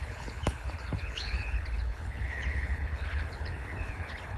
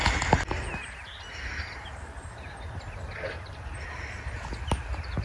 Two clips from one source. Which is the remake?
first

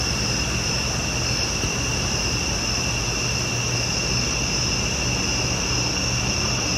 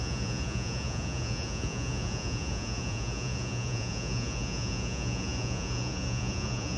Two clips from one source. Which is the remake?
second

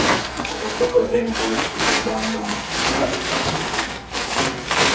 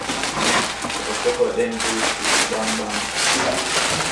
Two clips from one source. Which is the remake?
first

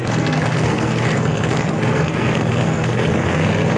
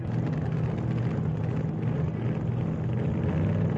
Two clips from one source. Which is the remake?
first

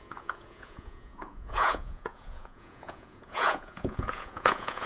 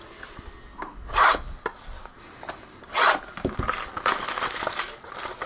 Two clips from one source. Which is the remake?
first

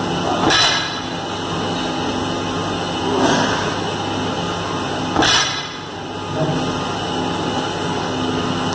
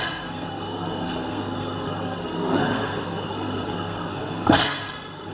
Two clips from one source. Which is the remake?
second